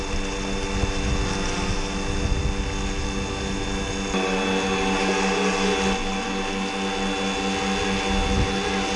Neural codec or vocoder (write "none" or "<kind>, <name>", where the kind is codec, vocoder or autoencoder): none